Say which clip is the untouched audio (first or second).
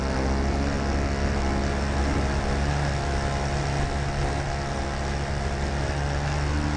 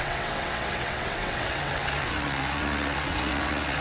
first